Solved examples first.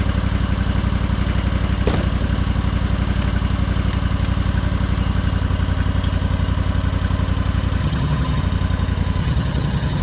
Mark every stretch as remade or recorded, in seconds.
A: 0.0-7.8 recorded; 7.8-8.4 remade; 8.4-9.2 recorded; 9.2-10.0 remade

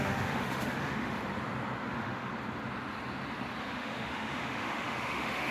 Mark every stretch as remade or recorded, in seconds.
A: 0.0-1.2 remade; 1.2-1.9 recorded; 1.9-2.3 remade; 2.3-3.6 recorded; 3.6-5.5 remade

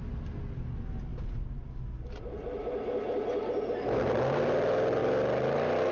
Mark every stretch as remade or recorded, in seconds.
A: 0.0-5.9 recorded

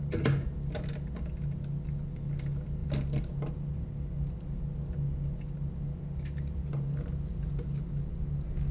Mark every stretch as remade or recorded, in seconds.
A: 0.0-8.7 recorded

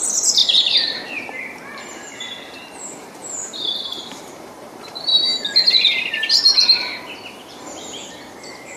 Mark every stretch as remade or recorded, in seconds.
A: 0.0-5.1 remade; 5.1-5.7 recorded; 5.7-6.9 remade; 6.9-7.5 recorded; 7.5-8.8 remade

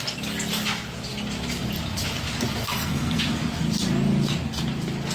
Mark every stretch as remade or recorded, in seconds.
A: 0.0-2.6 recorded; 2.6-3.2 remade; 3.2-5.1 recorded